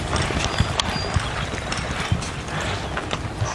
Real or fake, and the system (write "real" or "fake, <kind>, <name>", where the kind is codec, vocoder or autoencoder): real